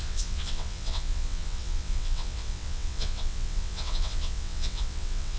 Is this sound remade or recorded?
remade